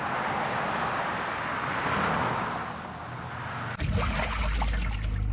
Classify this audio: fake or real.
real